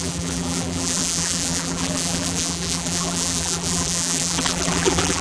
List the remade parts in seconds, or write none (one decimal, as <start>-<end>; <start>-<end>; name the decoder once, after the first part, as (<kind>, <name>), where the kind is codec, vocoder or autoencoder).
0.0-5.2 (vocoder, BigVGAN v2)